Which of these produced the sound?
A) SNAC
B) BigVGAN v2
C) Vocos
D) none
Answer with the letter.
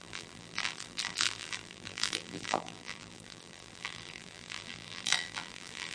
B